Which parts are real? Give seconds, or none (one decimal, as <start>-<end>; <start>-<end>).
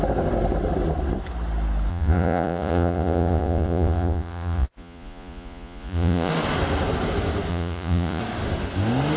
0.0-1.9; 6.3-7.5; 8.2-9.2